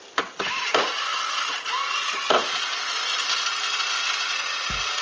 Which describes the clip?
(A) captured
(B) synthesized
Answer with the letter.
A